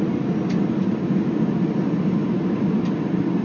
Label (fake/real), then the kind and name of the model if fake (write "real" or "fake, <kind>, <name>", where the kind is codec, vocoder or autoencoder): real